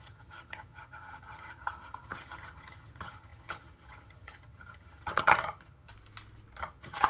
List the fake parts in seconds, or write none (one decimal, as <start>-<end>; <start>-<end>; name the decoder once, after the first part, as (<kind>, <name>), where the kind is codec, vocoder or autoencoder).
0.0-5.9 (vocoder, HiFi-GAN); 6.6-7.1